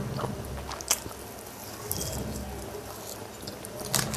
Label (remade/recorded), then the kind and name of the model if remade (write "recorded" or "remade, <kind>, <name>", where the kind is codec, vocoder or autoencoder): recorded